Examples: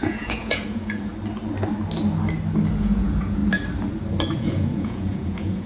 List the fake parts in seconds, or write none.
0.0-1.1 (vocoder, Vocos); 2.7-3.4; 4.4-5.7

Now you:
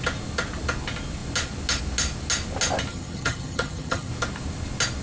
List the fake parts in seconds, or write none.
2.9-4.1 (vocoder, HiFi-GAN)

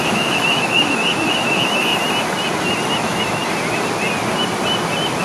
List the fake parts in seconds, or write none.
0.0-1.9 (autoencoder, DAC-VAE); 2.9-3.4

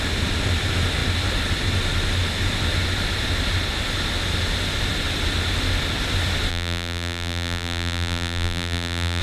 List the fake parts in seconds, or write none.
6.5-9.2 (vocoder, BigVGAN v2)

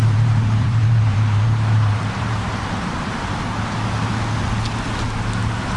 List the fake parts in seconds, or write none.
0.0-3.4 (vocoder, BigVGAN v2)

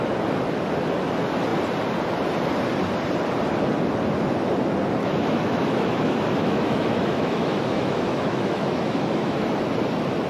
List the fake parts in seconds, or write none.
5.0-9.4 (autoencoder, DAC-VAE)